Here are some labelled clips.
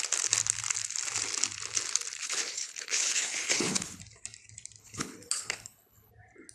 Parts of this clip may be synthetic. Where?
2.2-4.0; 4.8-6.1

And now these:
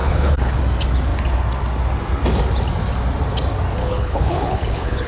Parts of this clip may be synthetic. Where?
0.0-0.6; 3.8-5.1

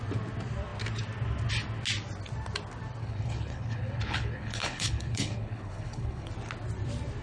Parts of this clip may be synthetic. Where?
3.0-6.3